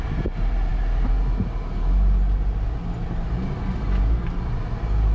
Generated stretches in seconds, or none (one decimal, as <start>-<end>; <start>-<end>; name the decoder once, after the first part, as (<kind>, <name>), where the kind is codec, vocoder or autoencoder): none